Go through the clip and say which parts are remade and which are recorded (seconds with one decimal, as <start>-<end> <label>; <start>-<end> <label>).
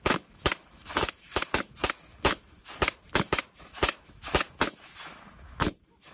0.0-6.1 remade